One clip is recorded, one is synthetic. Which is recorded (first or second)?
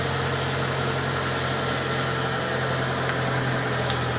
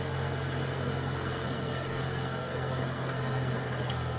first